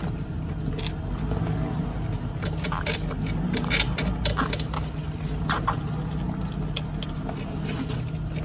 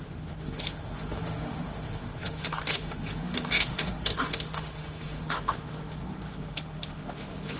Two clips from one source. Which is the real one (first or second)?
first